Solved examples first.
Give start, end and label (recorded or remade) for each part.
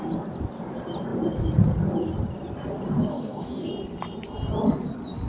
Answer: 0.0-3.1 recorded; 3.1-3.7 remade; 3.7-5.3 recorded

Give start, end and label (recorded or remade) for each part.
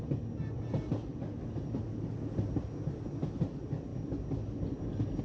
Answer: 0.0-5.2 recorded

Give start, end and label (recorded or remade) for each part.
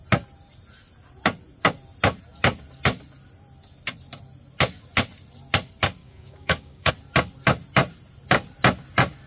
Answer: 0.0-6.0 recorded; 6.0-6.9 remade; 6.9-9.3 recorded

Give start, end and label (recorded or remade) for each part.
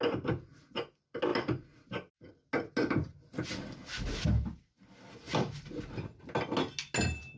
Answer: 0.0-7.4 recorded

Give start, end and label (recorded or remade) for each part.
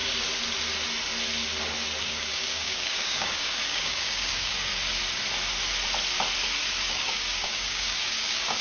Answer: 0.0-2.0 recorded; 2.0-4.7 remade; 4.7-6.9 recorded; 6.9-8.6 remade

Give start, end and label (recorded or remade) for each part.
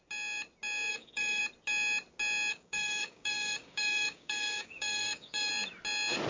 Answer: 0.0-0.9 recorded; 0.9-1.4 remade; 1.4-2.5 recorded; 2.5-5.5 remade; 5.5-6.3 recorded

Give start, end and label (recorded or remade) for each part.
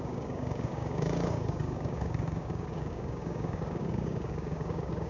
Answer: 0.0-5.1 remade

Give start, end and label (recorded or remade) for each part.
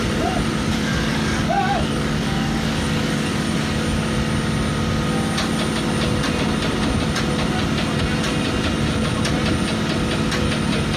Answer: 0.0-0.7 recorded; 0.7-3.5 remade; 3.5-11.0 recorded